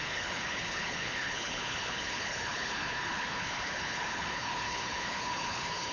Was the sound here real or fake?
fake